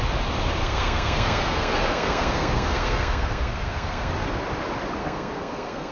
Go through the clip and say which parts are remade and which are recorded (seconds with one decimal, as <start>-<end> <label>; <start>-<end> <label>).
0.0-0.6 recorded; 0.6-4.1 remade; 4.1-5.0 recorded; 5.0-5.9 remade